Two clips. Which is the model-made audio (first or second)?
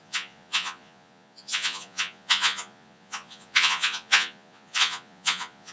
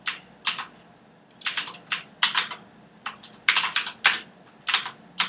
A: first